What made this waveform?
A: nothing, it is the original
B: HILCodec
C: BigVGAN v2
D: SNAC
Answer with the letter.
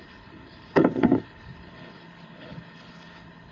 B